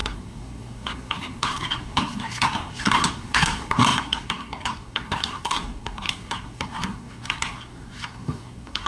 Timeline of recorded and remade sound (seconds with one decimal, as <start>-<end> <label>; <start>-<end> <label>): 0.0-8.9 remade